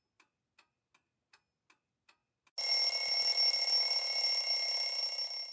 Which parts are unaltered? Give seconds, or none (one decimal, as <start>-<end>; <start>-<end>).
0.0-5.5